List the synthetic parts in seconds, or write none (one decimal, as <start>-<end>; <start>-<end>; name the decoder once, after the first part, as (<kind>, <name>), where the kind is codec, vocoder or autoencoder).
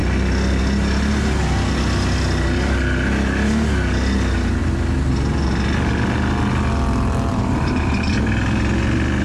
7.3-8.1 (vocoder, BigVGAN v2)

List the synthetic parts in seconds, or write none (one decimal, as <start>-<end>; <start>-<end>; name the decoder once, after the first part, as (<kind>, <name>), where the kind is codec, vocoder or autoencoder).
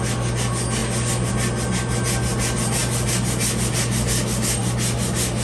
none